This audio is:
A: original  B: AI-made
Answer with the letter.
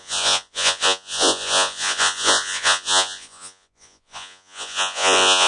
B